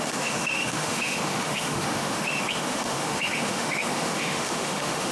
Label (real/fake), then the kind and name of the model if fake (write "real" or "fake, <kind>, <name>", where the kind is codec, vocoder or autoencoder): fake, autoencoder, DAC-VAE